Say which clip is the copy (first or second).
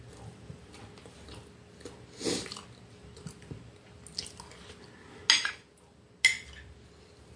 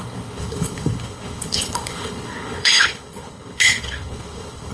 second